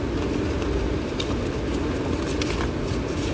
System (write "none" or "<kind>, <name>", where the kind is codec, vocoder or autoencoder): none